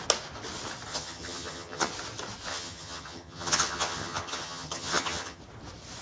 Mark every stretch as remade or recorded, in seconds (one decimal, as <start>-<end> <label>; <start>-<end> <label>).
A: 0.0-0.9 recorded; 0.9-1.9 remade; 1.9-2.5 recorded; 2.5-5.4 remade; 5.4-6.0 recorded